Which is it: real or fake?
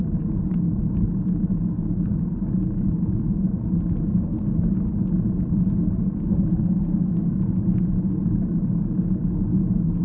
real